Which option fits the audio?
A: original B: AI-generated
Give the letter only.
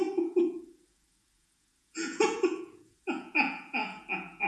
B